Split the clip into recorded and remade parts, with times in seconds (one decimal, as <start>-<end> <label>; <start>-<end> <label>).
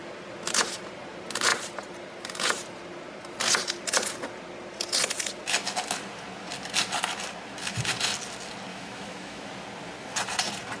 0.0-8.7 recorded; 8.7-9.5 remade; 9.5-10.8 recorded